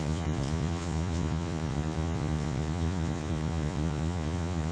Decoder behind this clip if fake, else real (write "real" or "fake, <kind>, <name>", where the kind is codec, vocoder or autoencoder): fake, vocoder, Vocos